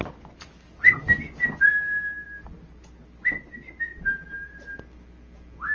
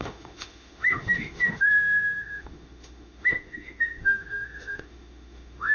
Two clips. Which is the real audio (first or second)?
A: first